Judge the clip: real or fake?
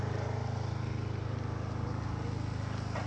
real